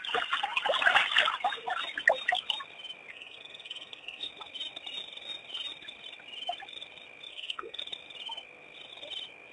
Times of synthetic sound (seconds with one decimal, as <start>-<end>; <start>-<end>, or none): 3.1-4.3; 7.3-7.8